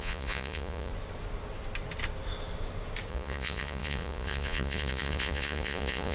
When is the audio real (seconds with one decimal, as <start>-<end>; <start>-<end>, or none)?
0.9-3.1